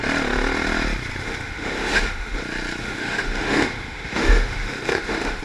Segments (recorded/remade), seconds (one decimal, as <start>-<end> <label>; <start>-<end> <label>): 0.0-1.2 recorded; 1.2-2.4 remade; 2.4-2.8 recorded; 2.8-5.4 remade